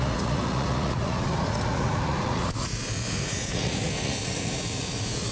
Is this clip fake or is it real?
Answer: fake